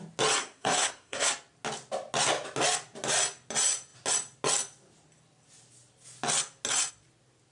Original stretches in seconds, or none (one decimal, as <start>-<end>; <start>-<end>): 0.0-0.4; 1.3-7.5